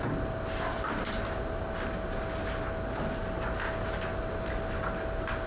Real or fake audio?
real